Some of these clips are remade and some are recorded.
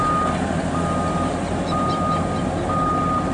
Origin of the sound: recorded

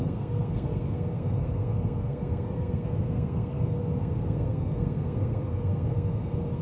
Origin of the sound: remade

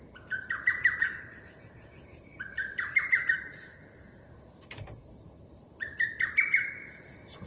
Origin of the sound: remade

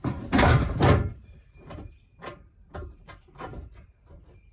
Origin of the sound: remade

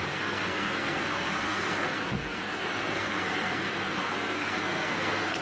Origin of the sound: remade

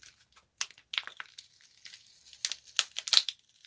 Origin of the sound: recorded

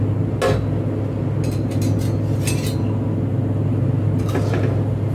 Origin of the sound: recorded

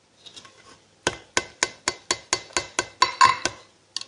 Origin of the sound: recorded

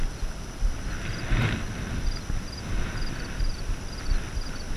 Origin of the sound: recorded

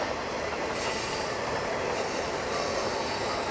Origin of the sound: recorded